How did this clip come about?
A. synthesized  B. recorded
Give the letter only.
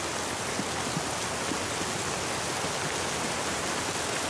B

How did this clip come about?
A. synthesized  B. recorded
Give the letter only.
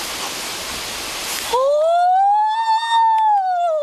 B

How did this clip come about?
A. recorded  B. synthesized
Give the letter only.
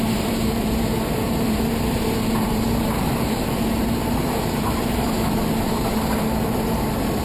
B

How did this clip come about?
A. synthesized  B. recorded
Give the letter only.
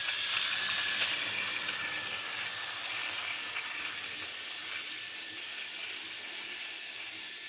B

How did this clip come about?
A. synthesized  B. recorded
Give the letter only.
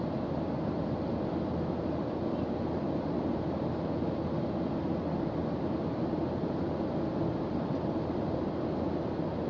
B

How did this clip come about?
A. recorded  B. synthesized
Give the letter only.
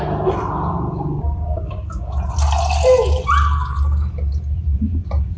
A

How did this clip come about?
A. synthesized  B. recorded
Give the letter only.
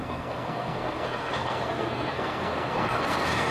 A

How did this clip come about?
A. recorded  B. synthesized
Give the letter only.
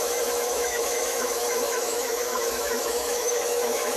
B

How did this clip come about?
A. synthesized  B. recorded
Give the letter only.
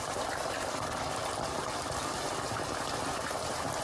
B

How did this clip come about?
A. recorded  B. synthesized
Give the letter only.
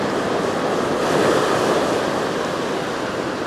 A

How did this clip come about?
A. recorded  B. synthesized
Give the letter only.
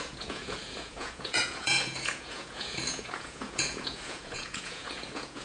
B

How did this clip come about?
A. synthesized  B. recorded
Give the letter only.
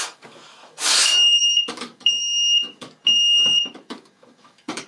A